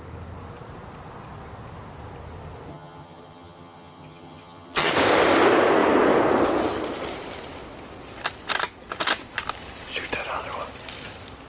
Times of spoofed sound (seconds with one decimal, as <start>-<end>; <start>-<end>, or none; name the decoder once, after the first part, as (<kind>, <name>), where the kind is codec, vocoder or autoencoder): 2.7-4.9 (vocoder, HiFi-GAN)